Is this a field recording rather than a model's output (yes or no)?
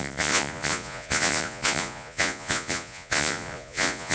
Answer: no